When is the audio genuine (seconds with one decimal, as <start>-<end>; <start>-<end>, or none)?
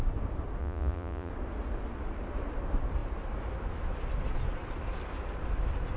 0.0-0.6; 1.3-6.0